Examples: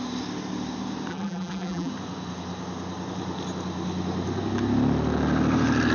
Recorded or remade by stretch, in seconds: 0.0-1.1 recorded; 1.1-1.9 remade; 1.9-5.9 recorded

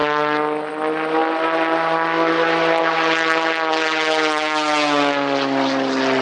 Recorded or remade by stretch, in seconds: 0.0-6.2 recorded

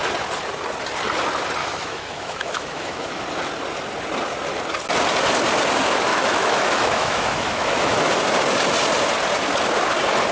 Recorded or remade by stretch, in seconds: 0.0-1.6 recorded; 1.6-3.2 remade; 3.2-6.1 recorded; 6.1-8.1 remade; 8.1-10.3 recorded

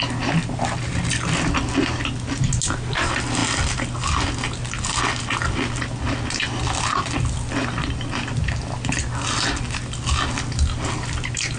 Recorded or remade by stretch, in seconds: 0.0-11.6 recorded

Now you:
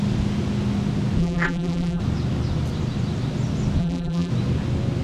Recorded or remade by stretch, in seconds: 0.0-1.2 recorded; 1.2-2.0 remade; 2.0-3.8 recorded; 3.8-4.3 remade; 4.3-5.0 recorded

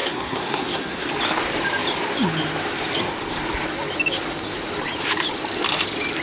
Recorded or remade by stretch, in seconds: 0.0-1.1 remade; 1.1-6.2 recorded

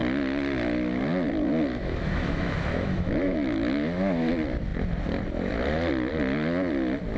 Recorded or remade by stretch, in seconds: 0.0-1.7 recorded; 1.7-4.3 remade; 4.3-7.2 recorded